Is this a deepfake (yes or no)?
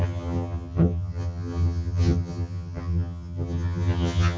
yes